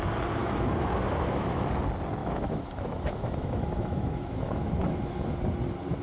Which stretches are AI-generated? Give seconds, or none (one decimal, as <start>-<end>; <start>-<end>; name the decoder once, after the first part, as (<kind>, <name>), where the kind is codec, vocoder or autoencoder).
0.4-1.6 (autoencoder, DAC-VAE); 2.2-5.3